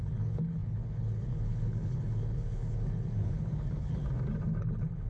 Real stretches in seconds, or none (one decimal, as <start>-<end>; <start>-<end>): 4.0-4.6